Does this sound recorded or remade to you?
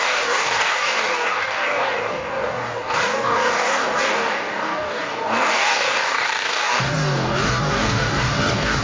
remade